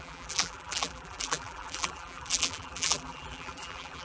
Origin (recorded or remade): remade